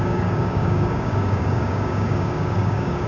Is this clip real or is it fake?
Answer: fake